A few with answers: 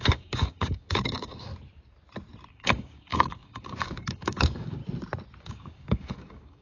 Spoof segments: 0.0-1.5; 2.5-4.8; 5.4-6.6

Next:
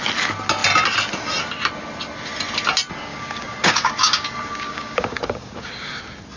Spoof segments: 3.1-6.0